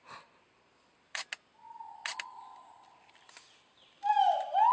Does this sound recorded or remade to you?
recorded